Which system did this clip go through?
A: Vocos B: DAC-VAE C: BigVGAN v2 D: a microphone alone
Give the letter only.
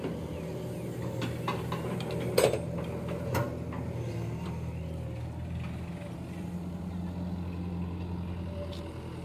D